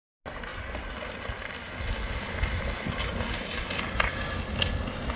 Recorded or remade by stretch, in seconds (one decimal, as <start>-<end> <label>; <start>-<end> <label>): 0.0-5.2 recorded

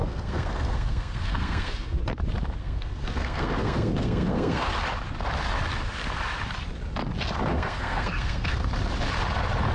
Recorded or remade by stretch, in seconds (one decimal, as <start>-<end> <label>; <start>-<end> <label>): 0.0-2.0 remade; 2.0-2.6 recorded; 2.6-4.7 remade; 4.7-7.5 recorded; 7.5-8.7 remade; 8.7-9.7 recorded